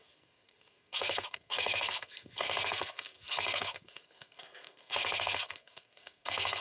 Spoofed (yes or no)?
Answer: yes